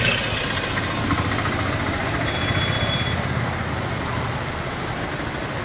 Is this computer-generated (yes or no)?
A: no